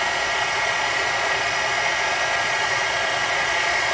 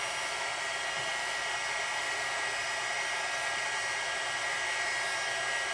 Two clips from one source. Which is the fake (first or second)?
first